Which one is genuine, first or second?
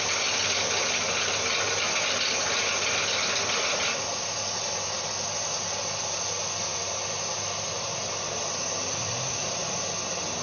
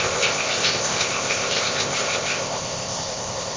first